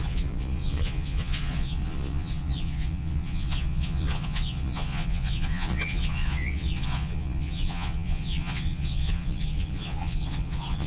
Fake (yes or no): yes